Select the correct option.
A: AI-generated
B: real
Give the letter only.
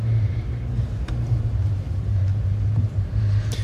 A